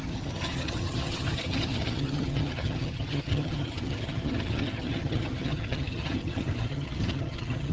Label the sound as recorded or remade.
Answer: remade